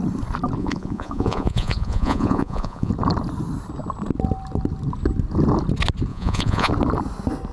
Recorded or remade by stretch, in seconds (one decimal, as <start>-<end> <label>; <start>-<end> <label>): 0.0-0.6 recorded; 0.6-2.9 remade; 2.9-6.1 recorded; 6.1-6.7 remade; 6.7-7.5 recorded